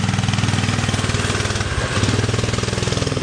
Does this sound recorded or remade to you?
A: recorded